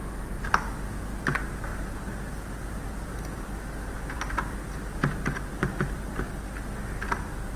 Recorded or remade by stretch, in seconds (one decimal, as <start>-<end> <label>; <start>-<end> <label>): 0.0-7.6 recorded